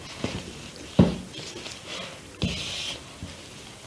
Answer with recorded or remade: recorded